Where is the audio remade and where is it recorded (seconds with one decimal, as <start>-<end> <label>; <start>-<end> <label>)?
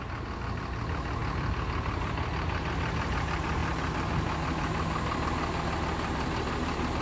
0.0-7.0 recorded